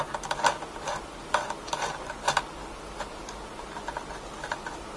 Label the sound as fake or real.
real